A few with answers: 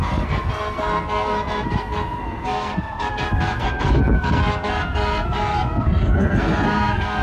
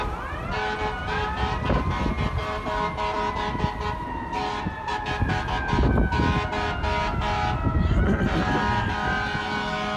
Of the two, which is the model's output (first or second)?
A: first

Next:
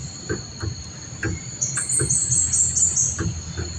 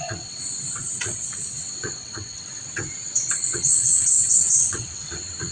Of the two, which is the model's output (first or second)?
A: second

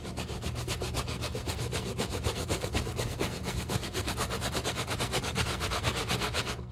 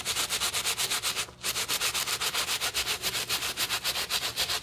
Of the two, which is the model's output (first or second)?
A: first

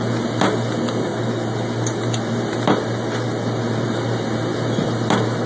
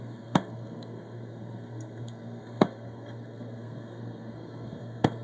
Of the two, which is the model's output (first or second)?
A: second